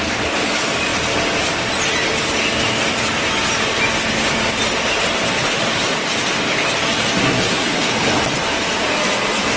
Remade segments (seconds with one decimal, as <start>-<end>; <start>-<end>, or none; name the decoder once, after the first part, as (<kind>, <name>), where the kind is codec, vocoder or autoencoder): 7.2-7.9 (codec, SNAC)

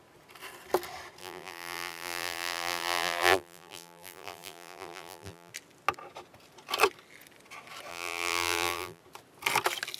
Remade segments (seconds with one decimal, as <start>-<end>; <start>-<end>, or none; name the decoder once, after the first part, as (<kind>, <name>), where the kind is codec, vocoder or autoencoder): 1.2-5.5 (vocoder, BigVGAN v2); 7.9-9.0

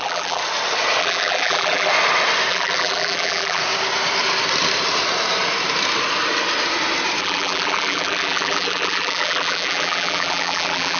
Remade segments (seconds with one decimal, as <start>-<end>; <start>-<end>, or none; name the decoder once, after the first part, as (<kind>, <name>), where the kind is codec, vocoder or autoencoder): 0.0-0.4 (vocoder, BigVGAN v2); 1.0-1.9; 2.5-3.6; 7.2-11.0

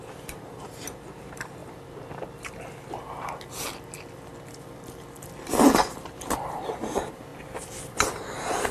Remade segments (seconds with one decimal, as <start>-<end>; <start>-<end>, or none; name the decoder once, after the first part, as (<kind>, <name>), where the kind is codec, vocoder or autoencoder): 0.0-1.6 (vocoder, BigVGAN v2); 5.9-7.3